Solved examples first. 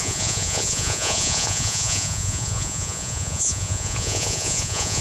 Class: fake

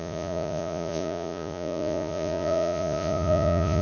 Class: fake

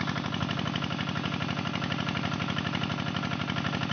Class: real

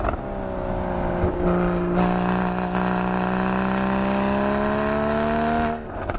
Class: real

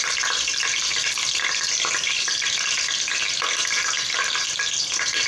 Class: real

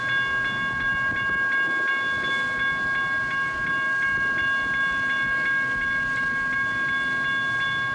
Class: real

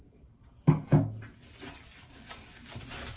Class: real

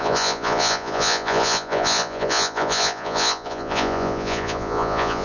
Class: fake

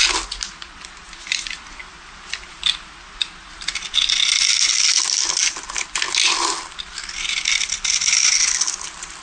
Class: real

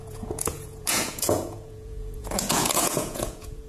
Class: fake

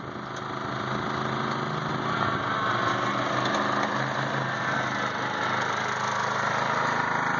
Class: real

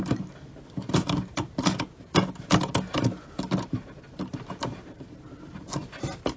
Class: real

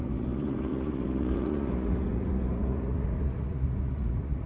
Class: fake